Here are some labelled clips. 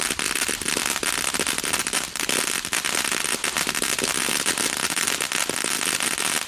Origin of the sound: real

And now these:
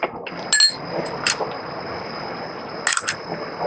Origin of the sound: real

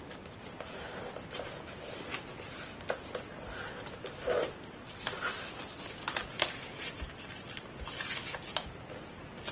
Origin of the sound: real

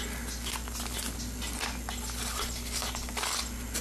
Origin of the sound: real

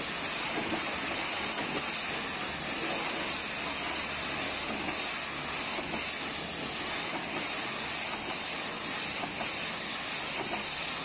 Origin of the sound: real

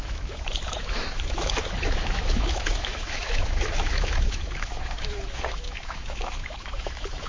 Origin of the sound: fake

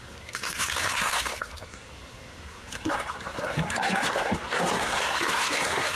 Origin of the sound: fake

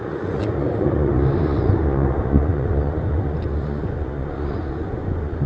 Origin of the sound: fake